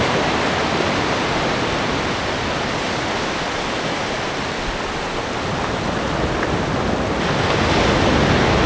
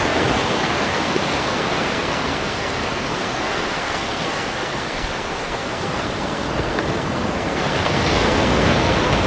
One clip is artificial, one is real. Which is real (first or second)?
first